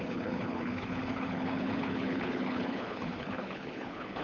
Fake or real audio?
fake